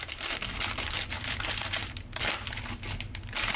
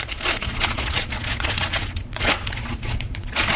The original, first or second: first